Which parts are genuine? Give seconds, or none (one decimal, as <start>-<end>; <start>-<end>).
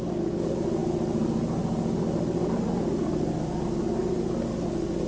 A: 0.0-5.1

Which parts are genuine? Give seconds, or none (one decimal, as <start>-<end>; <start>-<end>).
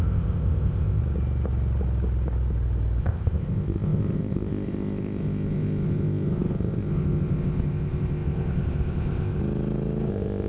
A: 1.0-3.0; 9.4-10.1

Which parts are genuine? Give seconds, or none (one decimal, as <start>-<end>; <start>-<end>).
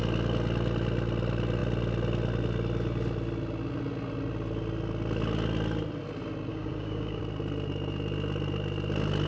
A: 0.0-6.5; 7.2-9.3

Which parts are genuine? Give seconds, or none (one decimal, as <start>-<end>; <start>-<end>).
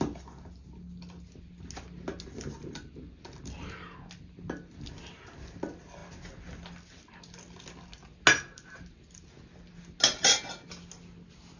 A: 0.0-11.6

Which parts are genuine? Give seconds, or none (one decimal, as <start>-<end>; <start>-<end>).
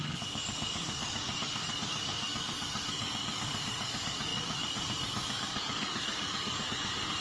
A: none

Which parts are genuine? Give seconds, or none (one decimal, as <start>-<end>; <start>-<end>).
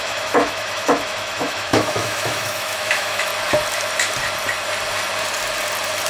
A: 3.3-6.1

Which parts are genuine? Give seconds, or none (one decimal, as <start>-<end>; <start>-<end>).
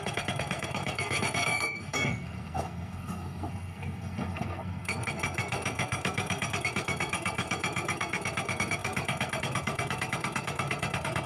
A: none